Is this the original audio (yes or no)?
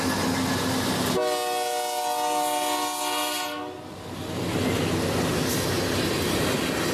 yes